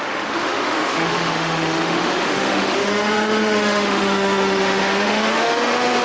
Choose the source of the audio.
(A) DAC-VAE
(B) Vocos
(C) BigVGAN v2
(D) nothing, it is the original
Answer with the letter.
A